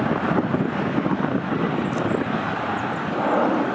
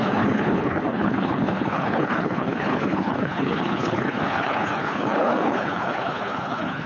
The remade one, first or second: second